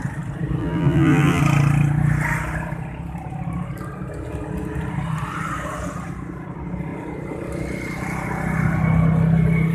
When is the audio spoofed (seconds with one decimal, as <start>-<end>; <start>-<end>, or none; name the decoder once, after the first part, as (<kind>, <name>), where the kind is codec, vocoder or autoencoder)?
0.6-1.4 (vocoder, BigVGAN v2)